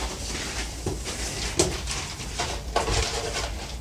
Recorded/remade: recorded